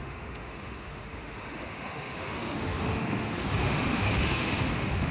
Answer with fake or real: fake